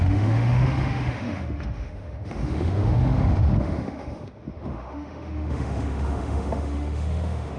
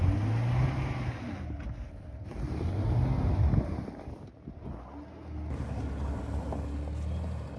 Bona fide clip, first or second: second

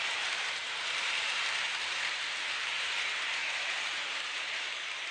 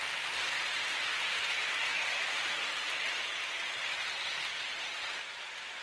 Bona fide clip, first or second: second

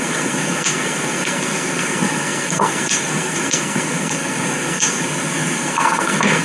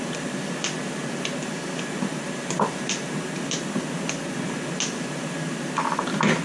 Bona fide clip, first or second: second